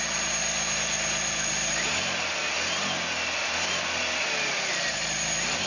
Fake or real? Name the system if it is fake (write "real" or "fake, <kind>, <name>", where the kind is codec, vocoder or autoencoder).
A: real